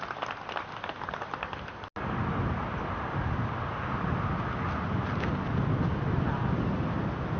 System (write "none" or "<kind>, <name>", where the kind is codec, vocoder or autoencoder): none